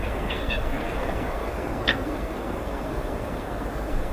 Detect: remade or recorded remade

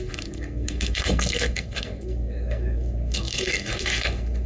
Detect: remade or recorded remade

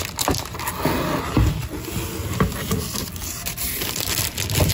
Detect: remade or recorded recorded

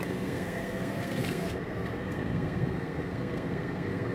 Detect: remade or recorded remade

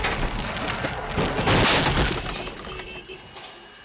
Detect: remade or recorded recorded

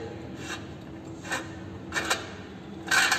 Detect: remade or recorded recorded